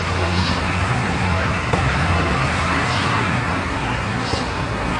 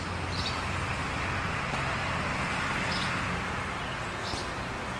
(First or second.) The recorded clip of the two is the second